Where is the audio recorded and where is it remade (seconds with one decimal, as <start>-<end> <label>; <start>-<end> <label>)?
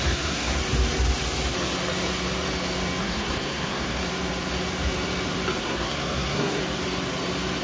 0.0-0.6 remade; 0.6-3.0 recorded; 3.0-4.0 remade; 4.0-5.6 recorded; 5.6-6.6 remade; 6.6-7.6 recorded